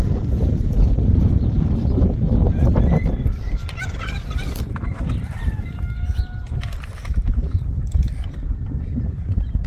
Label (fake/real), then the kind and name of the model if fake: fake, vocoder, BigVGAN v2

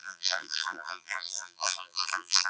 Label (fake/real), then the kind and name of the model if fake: fake, vocoder, BigVGAN v2